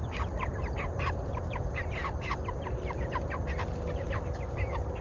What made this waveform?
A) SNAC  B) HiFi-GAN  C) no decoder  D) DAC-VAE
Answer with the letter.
C